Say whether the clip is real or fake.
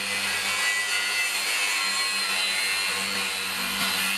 real